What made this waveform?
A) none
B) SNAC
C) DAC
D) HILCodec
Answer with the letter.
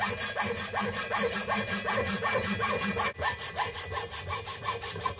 A